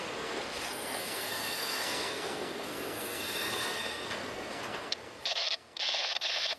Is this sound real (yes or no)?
no